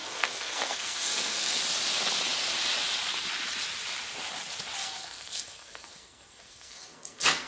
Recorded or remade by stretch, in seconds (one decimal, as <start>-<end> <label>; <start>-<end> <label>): 0.0-1.6 remade; 1.6-4.8 recorded; 4.8-7.5 remade